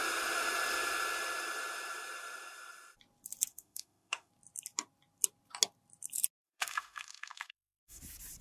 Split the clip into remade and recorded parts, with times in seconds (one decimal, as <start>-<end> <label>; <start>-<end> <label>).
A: 0.0-3.5 recorded; 3.5-4.3 remade; 4.3-6.4 recorded; 6.4-8.0 remade; 8.0-8.4 recorded